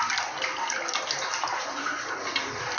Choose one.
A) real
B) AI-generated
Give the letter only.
A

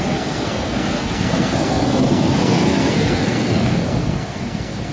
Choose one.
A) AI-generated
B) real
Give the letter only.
A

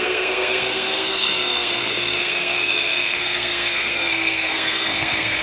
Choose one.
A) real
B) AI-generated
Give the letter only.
B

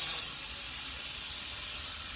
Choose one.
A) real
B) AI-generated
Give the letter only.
A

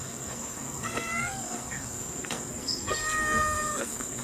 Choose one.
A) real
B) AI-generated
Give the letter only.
B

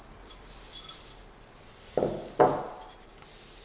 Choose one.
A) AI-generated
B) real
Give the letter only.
B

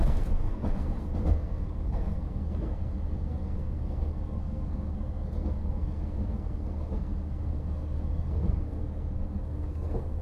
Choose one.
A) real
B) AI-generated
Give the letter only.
B